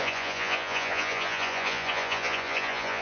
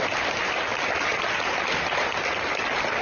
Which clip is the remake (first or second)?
first